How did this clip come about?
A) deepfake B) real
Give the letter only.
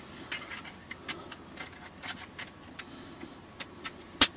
B